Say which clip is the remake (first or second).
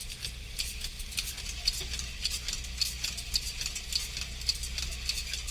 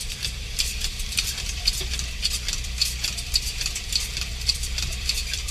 second